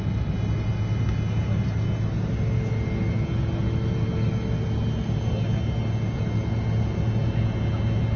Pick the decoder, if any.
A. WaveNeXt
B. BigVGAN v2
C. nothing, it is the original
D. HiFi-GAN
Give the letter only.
C